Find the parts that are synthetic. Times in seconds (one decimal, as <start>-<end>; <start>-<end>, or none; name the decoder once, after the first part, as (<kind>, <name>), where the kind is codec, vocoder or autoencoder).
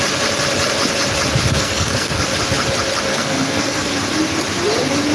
1.5-2.2 (codec, SNAC); 3.1-3.9